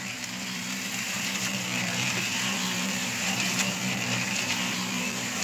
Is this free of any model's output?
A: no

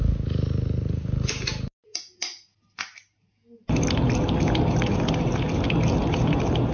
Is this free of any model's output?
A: yes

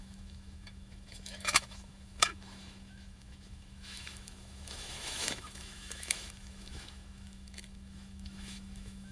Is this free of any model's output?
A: no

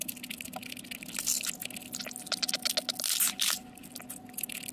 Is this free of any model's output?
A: yes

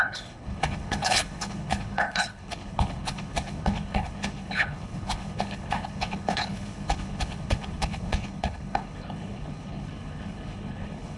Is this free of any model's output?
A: no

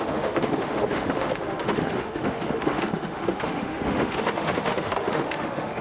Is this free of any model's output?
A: no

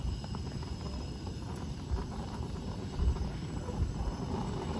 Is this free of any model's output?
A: yes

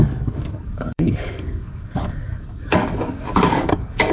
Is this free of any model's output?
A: no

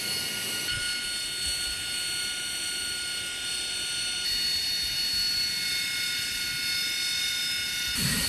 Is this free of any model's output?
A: yes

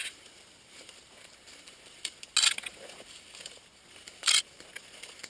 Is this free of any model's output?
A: yes